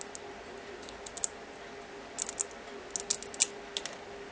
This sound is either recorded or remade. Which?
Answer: recorded